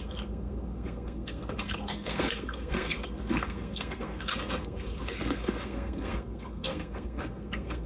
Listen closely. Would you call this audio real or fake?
fake